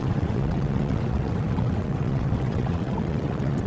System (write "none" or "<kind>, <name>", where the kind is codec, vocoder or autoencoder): vocoder, WaveNeXt